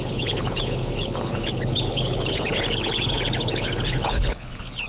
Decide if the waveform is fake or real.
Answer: fake